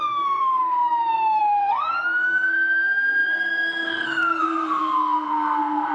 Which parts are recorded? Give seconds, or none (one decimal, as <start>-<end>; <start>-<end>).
none